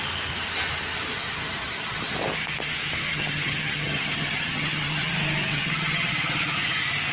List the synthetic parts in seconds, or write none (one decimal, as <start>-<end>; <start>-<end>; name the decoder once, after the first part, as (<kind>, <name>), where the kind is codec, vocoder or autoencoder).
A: 3.1-5.1 (vocoder, HiFi-GAN); 5.5-6.1